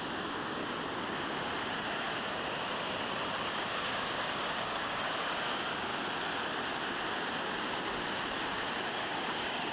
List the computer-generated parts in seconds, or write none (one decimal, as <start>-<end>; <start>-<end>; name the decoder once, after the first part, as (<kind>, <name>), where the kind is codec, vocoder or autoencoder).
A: 0.0-0.6 (codec, DAC); 3.5-5.9; 8.8-9.7